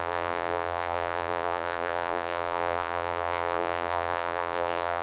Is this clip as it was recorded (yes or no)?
no